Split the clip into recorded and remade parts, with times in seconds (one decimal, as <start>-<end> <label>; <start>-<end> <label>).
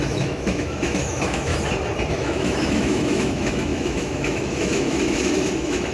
0.0-1.5 remade; 1.5-2.1 recorded; 2.1-5.9 remade